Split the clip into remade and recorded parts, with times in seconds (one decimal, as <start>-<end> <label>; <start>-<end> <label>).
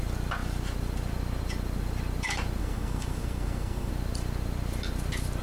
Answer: 0.0-2.6 recorded; 2.6-3.9 remade; 3.9-5.4 recorded